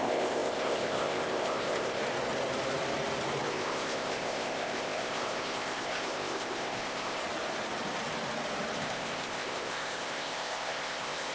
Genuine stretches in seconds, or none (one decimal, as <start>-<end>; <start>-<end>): 2.0-3.5; 7.2-8.8